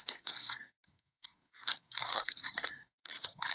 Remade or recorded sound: remade